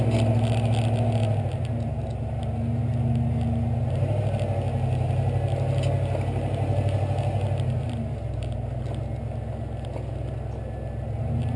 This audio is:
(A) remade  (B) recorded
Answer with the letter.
B